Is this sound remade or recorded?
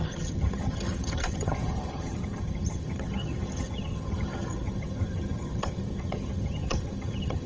remade